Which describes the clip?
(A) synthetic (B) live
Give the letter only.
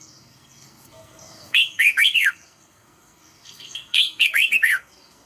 A